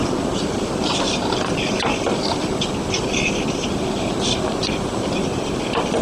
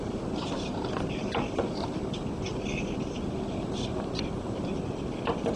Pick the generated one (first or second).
first